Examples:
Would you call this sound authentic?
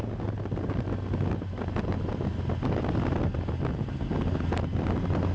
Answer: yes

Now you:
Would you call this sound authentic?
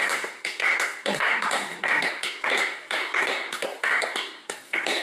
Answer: no